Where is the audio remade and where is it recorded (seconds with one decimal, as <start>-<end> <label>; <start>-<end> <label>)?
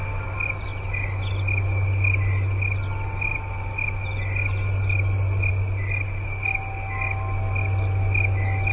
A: 0.0-8.7 recorded